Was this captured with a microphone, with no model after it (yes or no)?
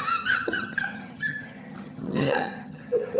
no